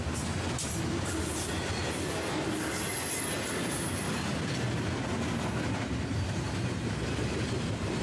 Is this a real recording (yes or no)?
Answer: yes